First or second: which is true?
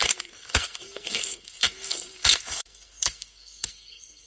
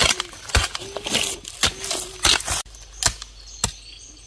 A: second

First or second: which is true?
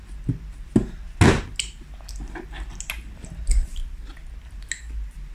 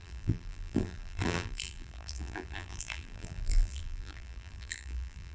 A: first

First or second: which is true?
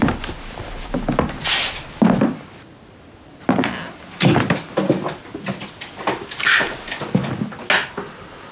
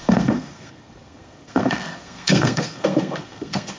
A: first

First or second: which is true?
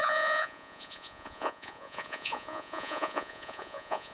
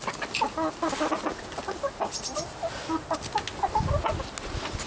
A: second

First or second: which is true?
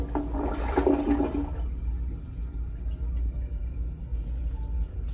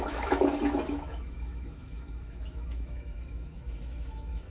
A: first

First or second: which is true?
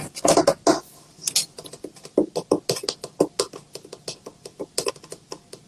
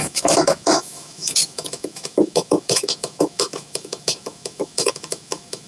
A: first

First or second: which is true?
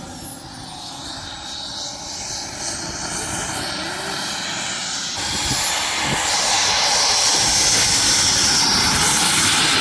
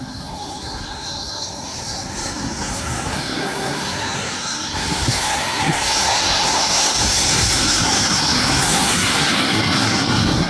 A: first